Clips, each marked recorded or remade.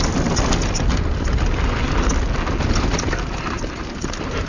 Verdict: recorded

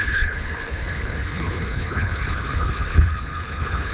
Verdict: remade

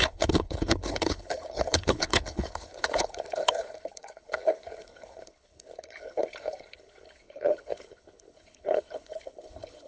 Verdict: remade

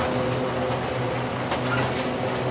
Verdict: recorded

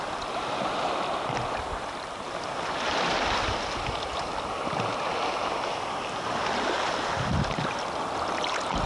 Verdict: recorded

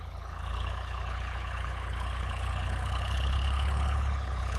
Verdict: remade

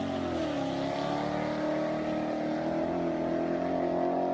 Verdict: recorded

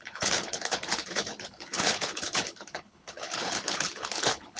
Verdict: remade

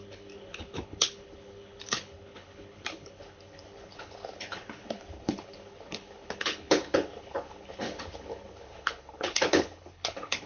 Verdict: remade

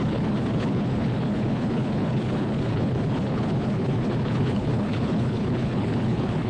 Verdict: remade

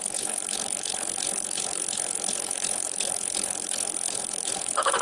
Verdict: remade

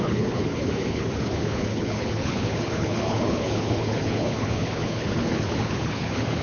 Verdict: remade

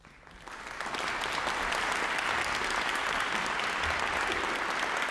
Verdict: recorded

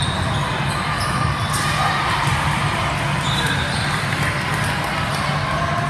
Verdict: recorded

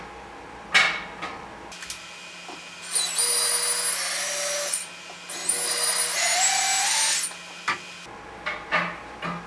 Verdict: recorded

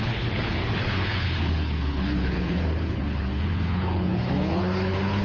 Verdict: remade